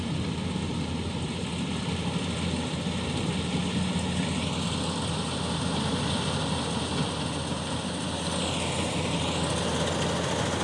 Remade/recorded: recorded